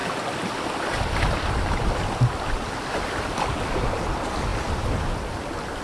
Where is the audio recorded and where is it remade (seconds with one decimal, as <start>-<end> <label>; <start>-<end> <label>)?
0.0-5.8 recorded